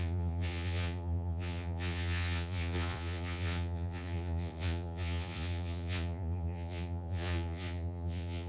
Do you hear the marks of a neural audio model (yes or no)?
yes